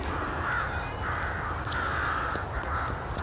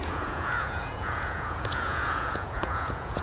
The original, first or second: first